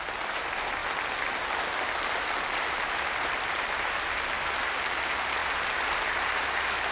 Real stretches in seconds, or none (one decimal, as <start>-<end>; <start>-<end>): 0.0-6.9